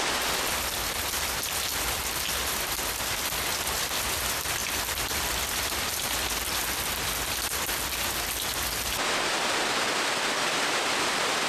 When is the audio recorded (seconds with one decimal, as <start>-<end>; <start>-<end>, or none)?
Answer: 0.0-11.5